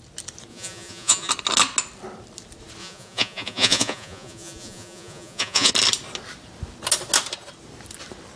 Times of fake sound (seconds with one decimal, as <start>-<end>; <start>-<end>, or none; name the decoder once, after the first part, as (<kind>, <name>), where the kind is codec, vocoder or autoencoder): 0.5-1.3 (vocoder, Vocos); 2.8-5.7